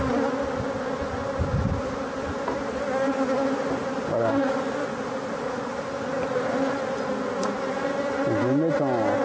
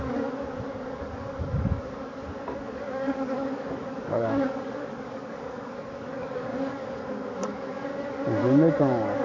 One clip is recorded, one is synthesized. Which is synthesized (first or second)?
second